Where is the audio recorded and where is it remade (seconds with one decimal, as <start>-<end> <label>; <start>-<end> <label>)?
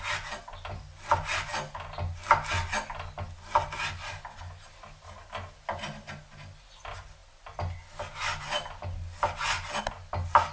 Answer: 0.0-10.5 recorded